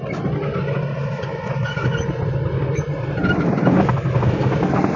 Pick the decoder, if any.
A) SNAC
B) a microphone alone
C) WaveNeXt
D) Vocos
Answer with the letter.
B